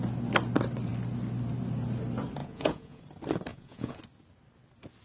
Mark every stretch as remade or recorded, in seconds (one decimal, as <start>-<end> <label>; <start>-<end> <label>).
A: 0.0-2.4 recorded; 2.4-3.0 remade; 3.0-3.5 recorded; 3.5-4.0 remade; 4.0-5.0 recorded